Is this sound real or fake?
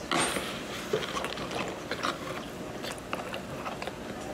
real